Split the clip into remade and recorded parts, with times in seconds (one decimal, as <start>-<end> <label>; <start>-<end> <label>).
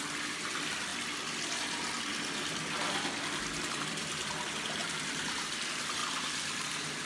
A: 0.0-0.9 remade; 0.9-2.9 recorded; 2.9-6.0 remade; 6.0-7.0 recorded